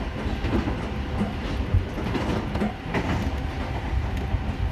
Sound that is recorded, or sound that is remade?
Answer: recorded